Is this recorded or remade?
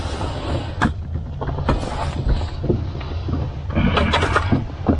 recorded